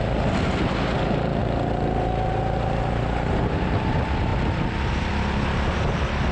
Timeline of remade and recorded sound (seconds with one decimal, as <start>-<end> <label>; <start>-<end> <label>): 0.0-6.3 recorded